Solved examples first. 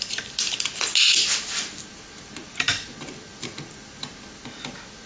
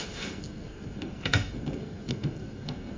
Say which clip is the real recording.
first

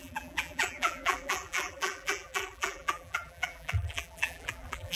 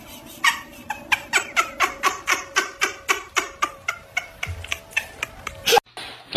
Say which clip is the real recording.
second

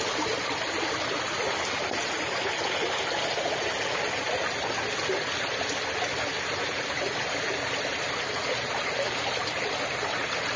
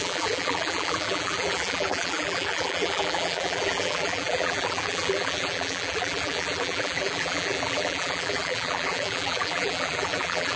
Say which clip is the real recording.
first